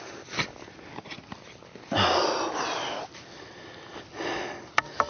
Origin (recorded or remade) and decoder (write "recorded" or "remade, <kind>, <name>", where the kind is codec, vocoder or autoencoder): recorded